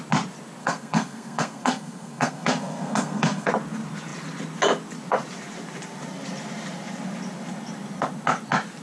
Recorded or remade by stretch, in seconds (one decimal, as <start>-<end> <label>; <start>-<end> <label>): 0.0-0.6 recorded; 0.6-3.5 remade; 3.5-8.8 recorded